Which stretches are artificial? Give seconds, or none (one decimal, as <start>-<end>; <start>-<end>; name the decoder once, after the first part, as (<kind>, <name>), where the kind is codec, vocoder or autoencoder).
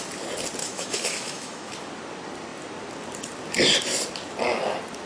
0.6-1.7 (autoencoder, DAC-VAE)